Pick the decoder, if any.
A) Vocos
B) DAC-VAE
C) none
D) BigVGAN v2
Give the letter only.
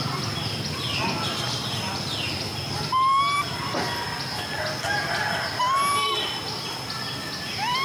C